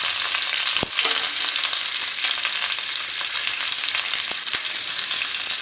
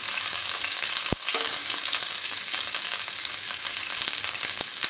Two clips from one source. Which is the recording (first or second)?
first